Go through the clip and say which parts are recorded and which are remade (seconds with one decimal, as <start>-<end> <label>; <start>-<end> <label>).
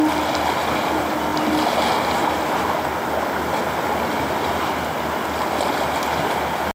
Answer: 0.0-6.7 recorded